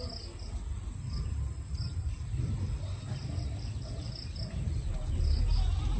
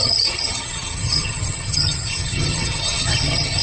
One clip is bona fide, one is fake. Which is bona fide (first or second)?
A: first